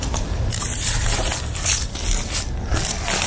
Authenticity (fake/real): real